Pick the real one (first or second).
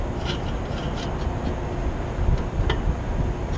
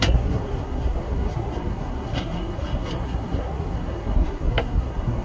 first